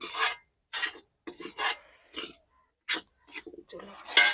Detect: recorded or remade recorded